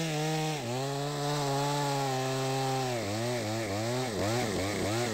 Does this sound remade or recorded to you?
recorded